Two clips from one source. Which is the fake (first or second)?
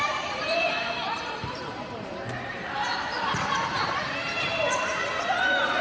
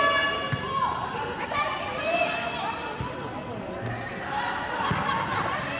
first